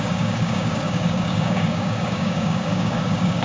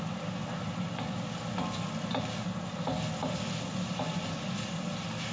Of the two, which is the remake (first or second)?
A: first